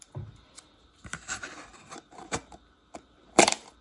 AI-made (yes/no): yes